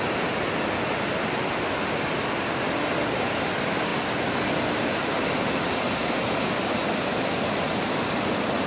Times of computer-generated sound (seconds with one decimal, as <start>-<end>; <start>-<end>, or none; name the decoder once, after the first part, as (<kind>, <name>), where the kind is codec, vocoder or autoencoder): none